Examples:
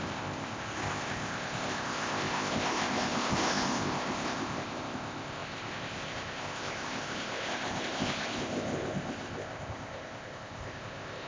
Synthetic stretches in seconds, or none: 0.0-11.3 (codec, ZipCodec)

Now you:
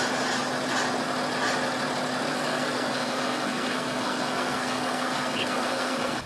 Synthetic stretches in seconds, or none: 2.3-6.3 (codec, SNAC)